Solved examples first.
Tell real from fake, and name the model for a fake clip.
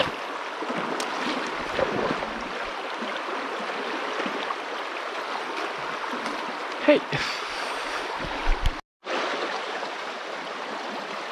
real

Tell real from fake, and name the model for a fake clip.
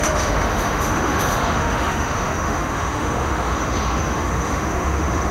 fake, autoencoder, DAC-VAE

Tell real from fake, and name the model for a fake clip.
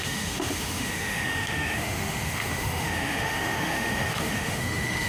fake, autoencoder, DAC-VAE